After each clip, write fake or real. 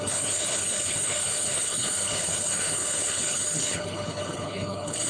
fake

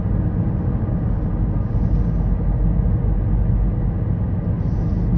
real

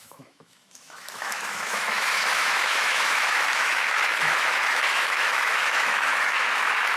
fake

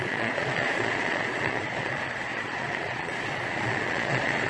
fake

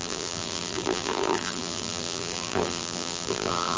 fake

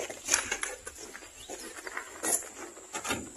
real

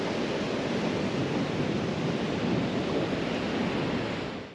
real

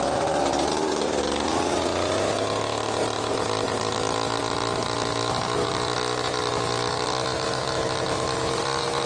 real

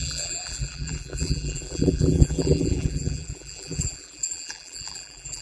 fake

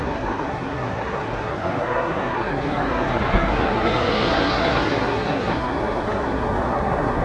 fake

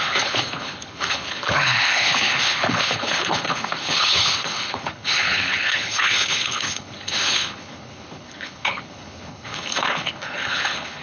fake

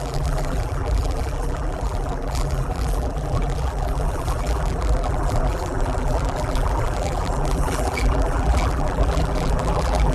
fake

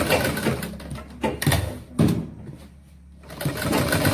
real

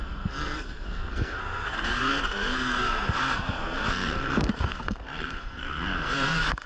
fake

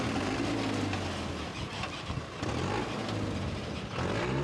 real